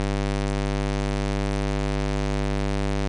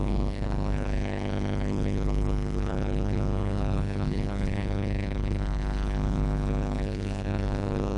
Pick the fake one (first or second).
second